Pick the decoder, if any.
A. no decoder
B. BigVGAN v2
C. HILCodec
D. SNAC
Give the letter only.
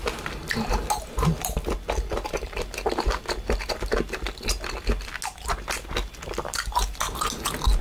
A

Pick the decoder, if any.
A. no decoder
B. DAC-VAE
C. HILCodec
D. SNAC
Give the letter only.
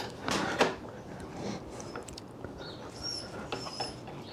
A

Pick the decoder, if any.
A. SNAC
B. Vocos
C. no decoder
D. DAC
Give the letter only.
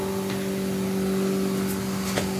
C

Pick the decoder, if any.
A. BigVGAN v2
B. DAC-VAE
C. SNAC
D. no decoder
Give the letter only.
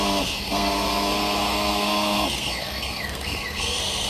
C